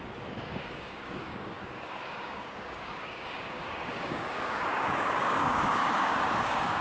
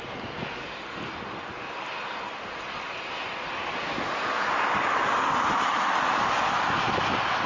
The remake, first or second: first